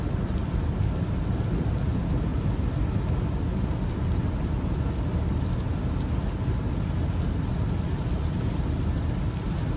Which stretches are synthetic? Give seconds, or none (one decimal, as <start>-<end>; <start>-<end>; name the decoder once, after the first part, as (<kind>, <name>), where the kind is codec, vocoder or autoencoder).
none